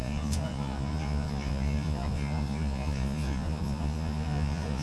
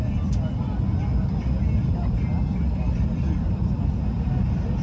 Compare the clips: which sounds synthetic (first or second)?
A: first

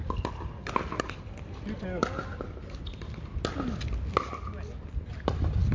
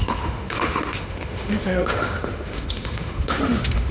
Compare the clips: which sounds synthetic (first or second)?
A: second